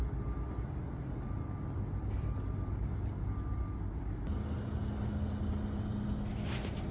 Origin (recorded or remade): recorded